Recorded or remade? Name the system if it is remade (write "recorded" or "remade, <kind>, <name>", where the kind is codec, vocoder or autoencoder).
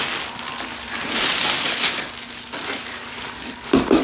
recorded